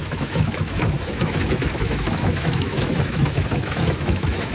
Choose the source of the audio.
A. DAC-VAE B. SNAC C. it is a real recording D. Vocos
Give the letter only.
A